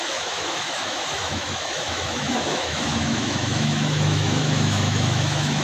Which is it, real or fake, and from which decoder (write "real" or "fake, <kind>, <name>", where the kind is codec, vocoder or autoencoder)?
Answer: fake, autoencoder, DAC-VAE